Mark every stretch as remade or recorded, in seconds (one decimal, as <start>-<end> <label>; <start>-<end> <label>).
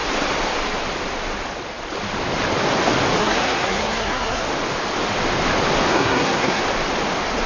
0.0-3.2 recorded; 3.2-4.4 remade; 4.4-5.9 recorded; 5.9-6.6 remade; 6.6-7.5 recorded